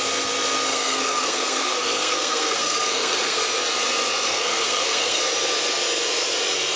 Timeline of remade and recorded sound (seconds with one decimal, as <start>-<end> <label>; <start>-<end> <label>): 0.0-0.7 recorded; 0.7-3.4 remade; 3.4-4.3 recorded; 4.3-5.2 remade; 5.2-6.8 recorded